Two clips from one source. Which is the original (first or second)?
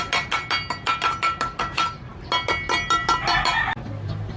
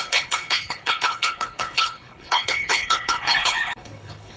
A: first